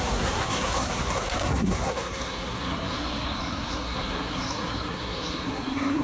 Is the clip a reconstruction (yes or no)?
yes